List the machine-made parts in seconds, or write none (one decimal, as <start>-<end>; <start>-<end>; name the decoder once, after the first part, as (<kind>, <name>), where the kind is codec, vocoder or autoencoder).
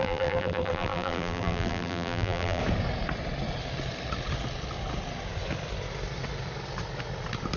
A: 0.0-2.6 (vocoder, BigVGAN v2)